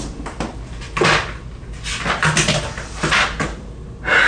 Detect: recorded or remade recorded